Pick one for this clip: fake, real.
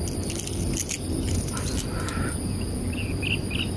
real